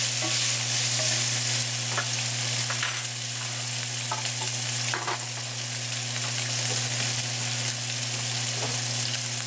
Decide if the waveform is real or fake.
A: real